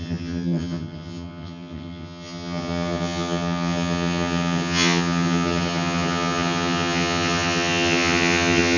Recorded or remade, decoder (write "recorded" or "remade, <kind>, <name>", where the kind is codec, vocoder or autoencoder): remade, vocoder, HiFi-GAN